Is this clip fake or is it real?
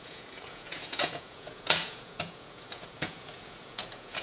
fake